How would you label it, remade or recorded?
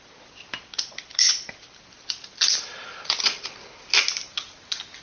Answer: recorded